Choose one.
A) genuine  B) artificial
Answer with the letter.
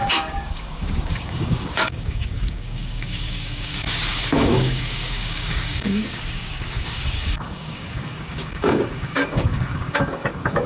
B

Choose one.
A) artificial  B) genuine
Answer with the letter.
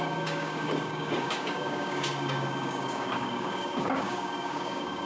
A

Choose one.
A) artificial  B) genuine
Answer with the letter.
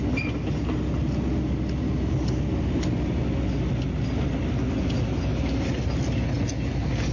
B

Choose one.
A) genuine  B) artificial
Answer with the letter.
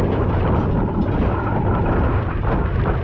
A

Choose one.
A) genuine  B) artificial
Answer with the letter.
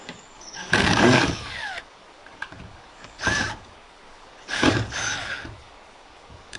B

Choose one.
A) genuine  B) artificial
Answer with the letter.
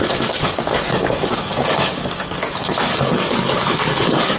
B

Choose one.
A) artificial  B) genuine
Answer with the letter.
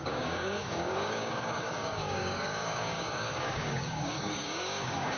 A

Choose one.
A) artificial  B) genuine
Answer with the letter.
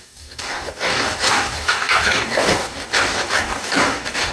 A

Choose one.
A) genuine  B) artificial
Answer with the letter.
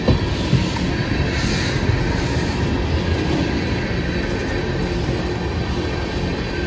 A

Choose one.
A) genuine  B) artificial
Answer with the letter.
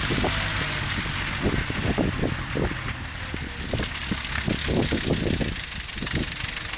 A